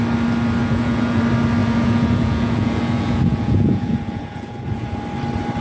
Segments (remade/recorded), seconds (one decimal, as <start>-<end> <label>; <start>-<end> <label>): 0.0-0.6 recorded; 0.6-1.2 remade; 1.2-1.6 recorded; 1.6-5.0 remade; 5.0-5.6 recorded